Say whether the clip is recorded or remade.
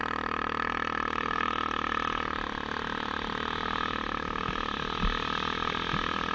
recorded